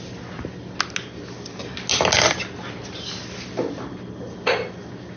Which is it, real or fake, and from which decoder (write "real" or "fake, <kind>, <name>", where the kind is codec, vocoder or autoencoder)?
real